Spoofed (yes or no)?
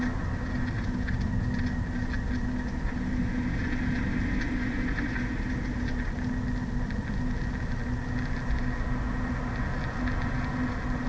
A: no